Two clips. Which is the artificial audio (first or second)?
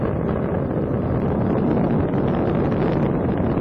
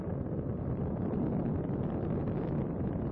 second